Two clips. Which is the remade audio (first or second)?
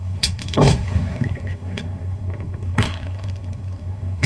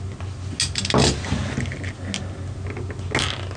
first